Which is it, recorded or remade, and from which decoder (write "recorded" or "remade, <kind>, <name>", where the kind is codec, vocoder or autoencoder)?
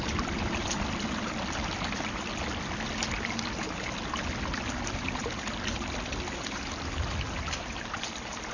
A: recorded